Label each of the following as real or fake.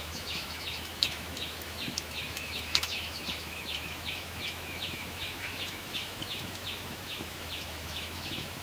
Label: fake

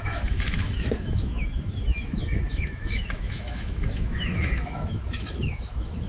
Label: fake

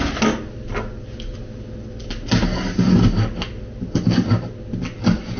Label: real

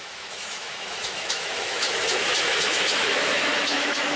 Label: fake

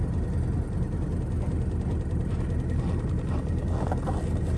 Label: real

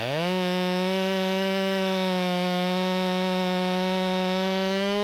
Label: fake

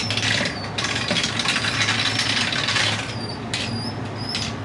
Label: real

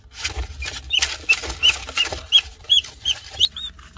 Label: real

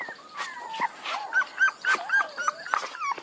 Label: real